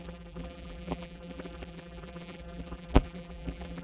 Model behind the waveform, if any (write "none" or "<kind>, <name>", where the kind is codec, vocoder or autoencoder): vocoder, BigVGAN v2